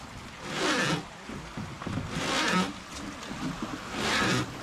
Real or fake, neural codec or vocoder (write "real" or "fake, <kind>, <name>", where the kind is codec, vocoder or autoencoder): real